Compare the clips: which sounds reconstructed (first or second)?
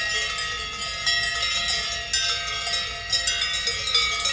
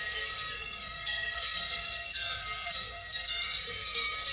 second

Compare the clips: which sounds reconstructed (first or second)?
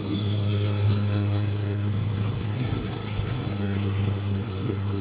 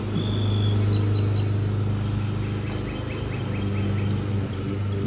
first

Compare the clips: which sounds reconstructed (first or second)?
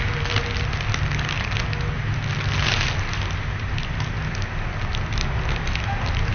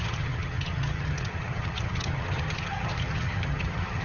second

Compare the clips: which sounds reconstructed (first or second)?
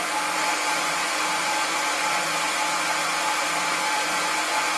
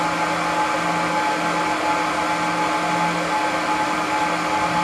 first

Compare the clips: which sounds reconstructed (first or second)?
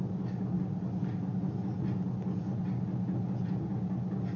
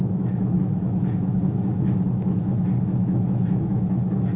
second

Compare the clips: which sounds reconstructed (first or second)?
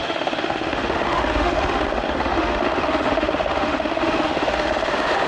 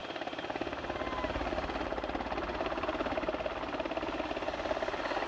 first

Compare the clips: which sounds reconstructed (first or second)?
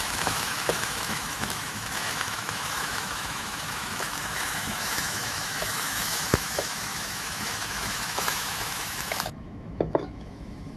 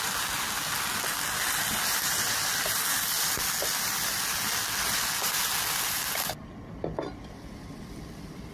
first